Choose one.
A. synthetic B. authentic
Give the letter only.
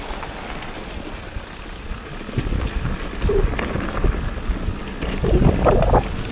B